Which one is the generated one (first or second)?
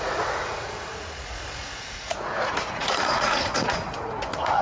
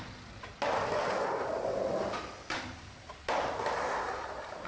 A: first